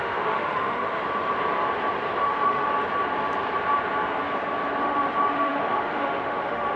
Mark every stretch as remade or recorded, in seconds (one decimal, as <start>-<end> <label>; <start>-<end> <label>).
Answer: 0.0-1.0 remade; 1.0-2.2 recorded; 2.2-2.7 remade; 2.7-4.8 recorded; 4.8-6.8 remade

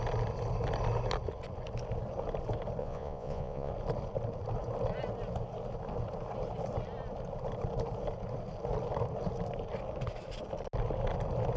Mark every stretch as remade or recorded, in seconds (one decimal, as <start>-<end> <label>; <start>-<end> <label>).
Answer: 0.0-2.8 recorded; 2.8-3.7 remade; 3.7-11.6 recorded

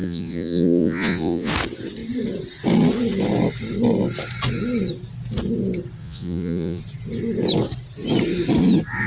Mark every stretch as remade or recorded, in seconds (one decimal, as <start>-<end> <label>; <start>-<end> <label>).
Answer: 0.0-1.5 remade; 1.5-6.0 recorded; 6.0-6.8 remade; 6.8-9.1 recorded

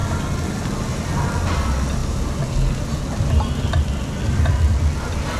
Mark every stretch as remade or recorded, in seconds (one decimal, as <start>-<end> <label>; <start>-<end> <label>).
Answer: 0.0-5.4 recorded

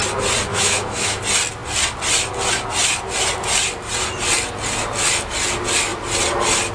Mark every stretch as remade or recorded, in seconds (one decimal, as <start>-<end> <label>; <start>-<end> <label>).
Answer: 0.0-0.5 recorded; 0.5-1.2 remade; 1.2-6.7 recorded

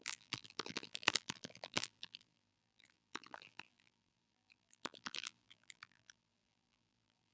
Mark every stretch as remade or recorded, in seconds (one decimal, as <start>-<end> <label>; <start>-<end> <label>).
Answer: 0.0-7.3 remade

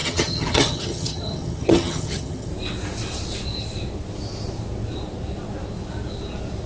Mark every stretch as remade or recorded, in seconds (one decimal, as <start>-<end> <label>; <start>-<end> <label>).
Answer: 0.0-2.5 remade; 2.5-6.7 recorded

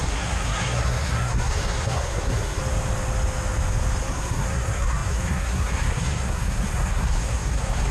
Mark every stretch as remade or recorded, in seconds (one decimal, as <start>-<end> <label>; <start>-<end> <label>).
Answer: 0.0-2.6 remade; 2.6-4.0 recorded; 4.0-7.9 remade